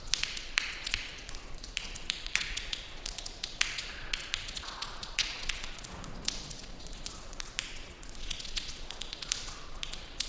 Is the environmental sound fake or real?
fake